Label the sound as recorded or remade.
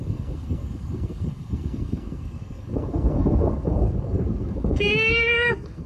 remade